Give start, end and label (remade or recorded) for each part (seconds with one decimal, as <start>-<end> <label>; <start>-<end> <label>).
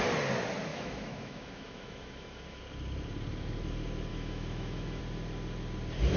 0.0-0.7 recorded; 0.7-2.6 remade; 2.6-4.1 recorded; 4.1-5.0 remade; 5.0-6.2 recorded